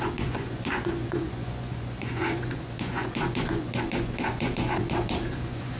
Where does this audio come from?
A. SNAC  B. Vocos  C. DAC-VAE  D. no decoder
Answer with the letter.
B